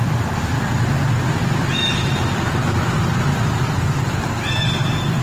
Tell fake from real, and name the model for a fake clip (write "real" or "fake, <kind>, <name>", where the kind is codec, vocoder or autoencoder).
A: fake, vocoder, BigVGAN v2